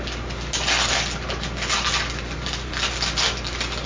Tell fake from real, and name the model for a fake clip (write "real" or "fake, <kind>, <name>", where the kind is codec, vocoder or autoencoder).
real